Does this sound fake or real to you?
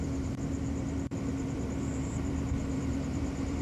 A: fake